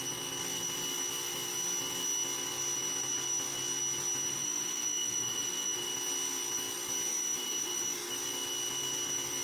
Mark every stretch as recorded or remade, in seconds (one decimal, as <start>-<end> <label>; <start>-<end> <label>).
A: 0.0-4.3 recorded; 4.3-5.9 remade; 5.9-7.1 recorded; 7.1-8.1 remade; 8.1-9.4 recorded